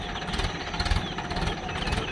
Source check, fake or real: real